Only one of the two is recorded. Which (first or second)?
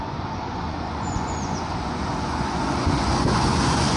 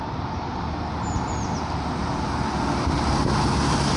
second